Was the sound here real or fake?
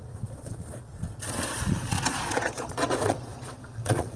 fake